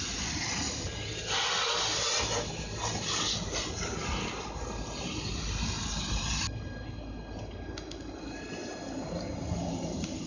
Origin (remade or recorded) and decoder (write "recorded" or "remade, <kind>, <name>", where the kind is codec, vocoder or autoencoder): recorded